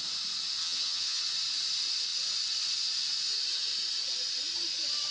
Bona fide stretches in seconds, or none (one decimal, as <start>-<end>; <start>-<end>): 0.0-0.6; 1.2-5.1